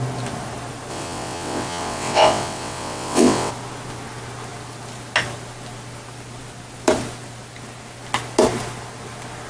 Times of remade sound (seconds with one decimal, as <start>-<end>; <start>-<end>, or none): 0.9-3.5